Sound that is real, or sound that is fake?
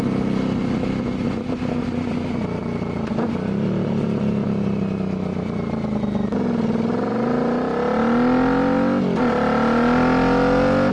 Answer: real